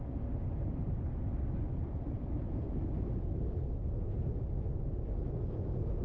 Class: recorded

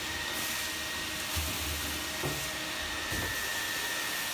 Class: recorded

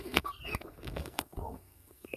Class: remade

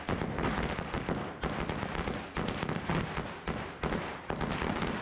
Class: recorded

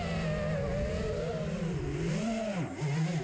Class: recorded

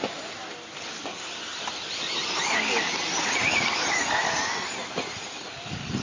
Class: recorded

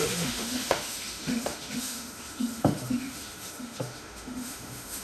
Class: remade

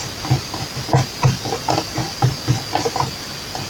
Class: recorded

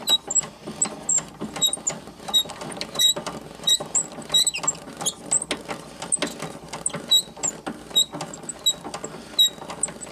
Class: recorded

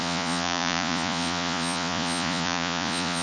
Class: remade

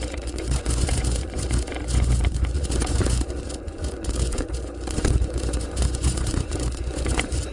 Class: remade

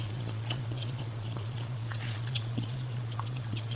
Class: remade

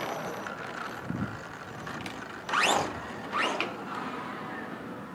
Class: recorded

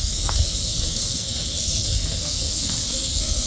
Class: remade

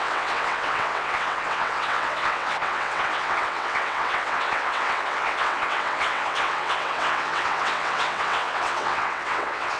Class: remade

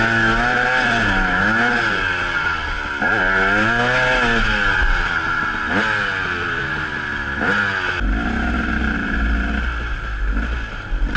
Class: recorded